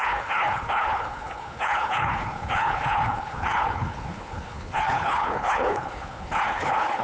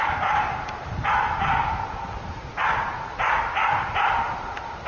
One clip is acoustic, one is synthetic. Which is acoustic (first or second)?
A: second